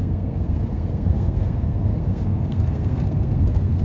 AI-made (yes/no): yes